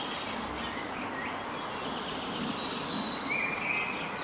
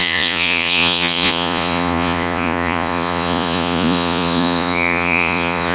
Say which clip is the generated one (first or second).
second